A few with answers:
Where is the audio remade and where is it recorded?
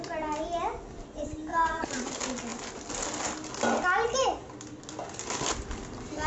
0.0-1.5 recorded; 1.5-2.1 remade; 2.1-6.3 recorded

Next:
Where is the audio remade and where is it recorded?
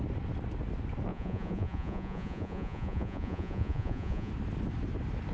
0.0-1.1 recorded; 1.1-4.3 remade; 4.3-5.3 recorded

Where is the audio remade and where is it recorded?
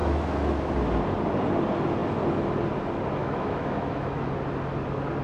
0.0-0.7 remade; 0.7-3.2 recorded; 3.2-4.3 remade; 4.3-5.2 recorded